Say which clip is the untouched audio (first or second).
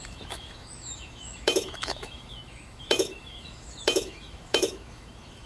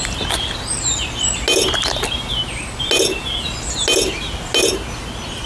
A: second